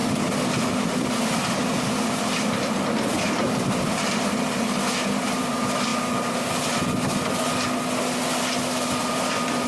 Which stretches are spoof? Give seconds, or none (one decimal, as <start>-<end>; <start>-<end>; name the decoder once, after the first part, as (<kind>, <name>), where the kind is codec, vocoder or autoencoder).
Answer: 3.6-5.9 (vocoder, BigVGAN v2); 9.0-9.7